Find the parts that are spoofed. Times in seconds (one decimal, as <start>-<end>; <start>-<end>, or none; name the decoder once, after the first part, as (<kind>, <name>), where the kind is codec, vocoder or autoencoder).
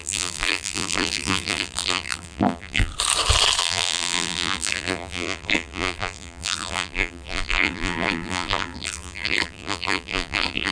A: 0.0-2.9 (vocoder, BigVGAN v2); 3.6-10.7